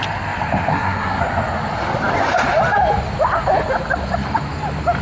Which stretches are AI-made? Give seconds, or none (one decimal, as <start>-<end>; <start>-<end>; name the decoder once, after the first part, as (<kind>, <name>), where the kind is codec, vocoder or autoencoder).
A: 0.7-1.2 (codec, SNAC)